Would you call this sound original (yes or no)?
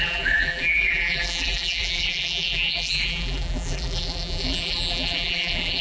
no